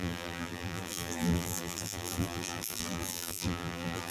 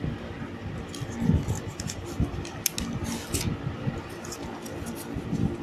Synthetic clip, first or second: first